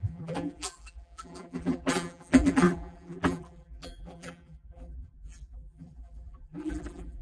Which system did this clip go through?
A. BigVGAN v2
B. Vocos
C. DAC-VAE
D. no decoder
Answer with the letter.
A